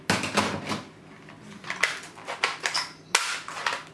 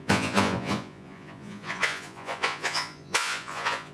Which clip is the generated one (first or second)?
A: second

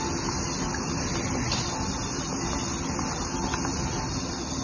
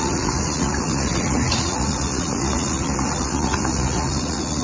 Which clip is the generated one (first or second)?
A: second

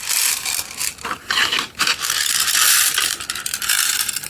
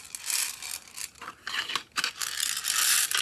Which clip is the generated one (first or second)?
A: first